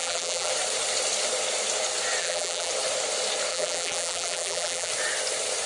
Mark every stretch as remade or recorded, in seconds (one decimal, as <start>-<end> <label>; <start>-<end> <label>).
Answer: 0.0-0.5 remade; 0.5-2.2 recorded; 2.2-2.7 remade; 2.7-3.5 recorded; 3.5-4.9 remade; 4.9-5.7 recorded